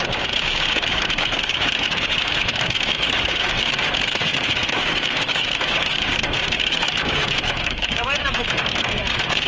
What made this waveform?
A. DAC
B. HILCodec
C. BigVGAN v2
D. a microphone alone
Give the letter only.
A